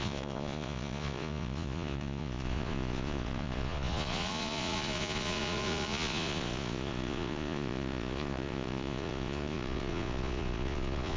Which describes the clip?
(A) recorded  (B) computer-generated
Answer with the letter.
B